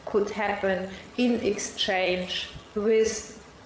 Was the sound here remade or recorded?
remade